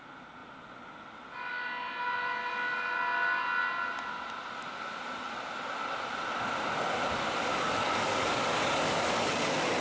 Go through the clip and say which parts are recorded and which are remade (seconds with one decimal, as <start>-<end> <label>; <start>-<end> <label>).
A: 0.0-7.5 recorded; 7.5-9.3 remade; 9.3-9.8 recorded